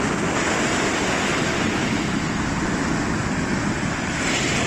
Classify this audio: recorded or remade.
recorded